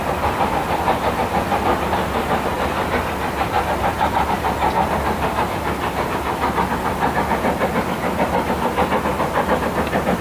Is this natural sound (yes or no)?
yes